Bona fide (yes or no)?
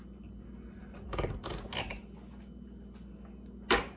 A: yes